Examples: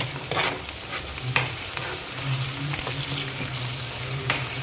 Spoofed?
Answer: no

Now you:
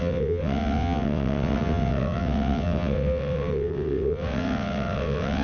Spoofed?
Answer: yes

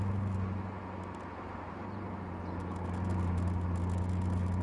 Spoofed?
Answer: no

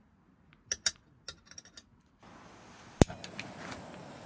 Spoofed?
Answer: no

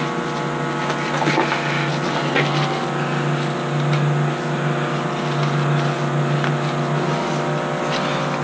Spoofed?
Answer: no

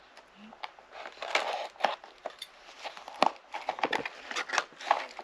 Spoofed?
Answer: no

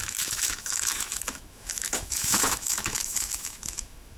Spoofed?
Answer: yes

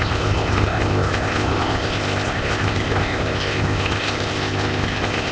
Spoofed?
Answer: yes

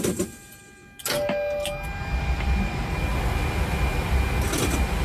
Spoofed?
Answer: no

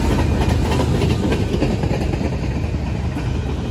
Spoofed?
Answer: no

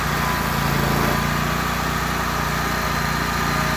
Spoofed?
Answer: no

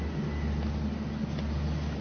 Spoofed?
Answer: no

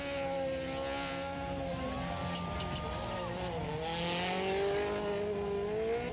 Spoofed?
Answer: no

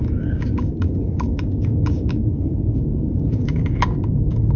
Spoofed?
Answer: yes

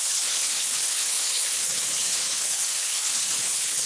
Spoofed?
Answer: yes